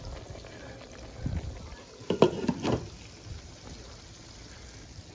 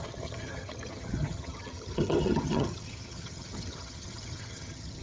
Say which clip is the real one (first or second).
first